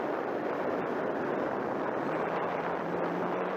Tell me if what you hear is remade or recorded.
remade